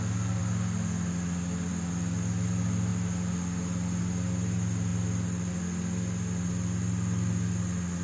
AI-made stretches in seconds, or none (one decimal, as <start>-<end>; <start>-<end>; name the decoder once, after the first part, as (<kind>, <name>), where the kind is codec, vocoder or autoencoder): none